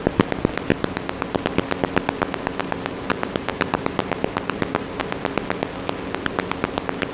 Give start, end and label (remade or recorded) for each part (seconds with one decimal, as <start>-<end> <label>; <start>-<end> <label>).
0.0-0.7 recorded; 0.7-1.4 remade; 1.4-3.1 recorded; 3.1-5.0 remade; 5.0-7.1 recorded